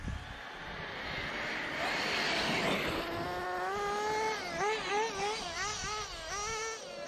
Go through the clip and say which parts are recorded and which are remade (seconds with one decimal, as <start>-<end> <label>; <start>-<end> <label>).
0.0-7.1 recorded

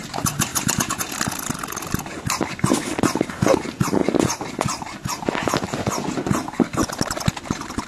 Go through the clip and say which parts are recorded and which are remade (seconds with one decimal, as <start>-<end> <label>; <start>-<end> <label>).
0.0-7.9 recorded